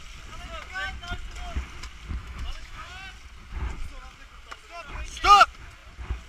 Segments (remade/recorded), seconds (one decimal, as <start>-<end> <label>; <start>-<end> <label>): 0.0-2.2 recorded; 2.2-2.9 remade; 2.9-6.3 recorded